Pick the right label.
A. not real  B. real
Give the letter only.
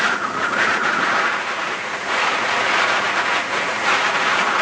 A